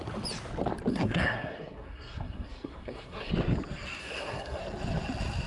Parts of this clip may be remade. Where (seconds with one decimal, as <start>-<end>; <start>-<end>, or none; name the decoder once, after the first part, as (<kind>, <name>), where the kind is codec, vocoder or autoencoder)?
0.9-3.3 (codec, SNAC); 4.0-4.6